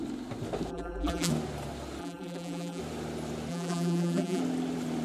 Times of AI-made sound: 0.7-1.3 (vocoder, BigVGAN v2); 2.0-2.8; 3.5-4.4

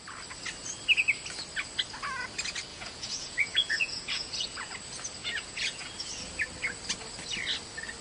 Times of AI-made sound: 2.7-4.7 (vocoder, Vocos); 5.2-5.9

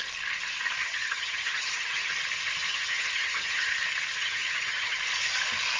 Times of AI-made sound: 0.8-2.1 (vocoder, HiFi-GAN); 2.7-3.7; 4.2-5.0

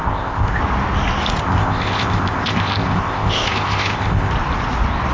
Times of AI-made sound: 0.0-0.6 (codec, ZipCodec); 1.4-4.3

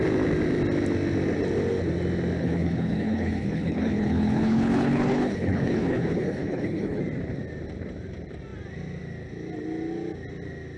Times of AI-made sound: 2.4-7.0 (codec, HILCodec)